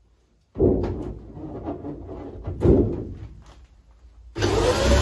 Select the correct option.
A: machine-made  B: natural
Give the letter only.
B